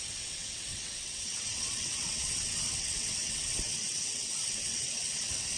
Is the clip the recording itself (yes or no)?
no